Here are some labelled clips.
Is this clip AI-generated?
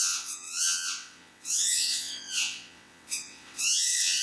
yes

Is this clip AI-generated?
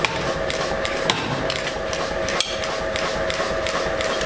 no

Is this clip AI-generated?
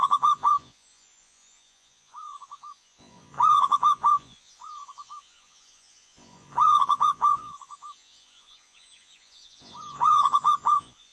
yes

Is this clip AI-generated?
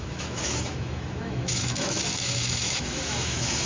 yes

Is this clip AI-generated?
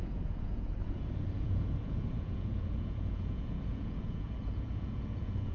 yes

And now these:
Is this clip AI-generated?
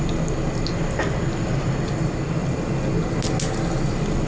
no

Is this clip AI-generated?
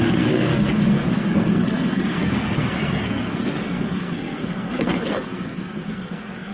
yes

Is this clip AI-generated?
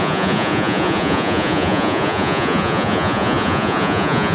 yes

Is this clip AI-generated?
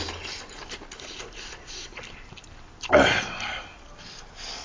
no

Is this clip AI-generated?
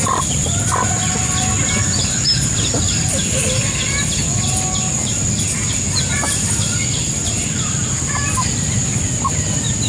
no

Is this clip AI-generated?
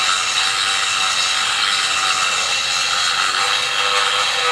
no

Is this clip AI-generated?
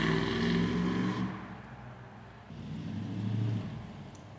no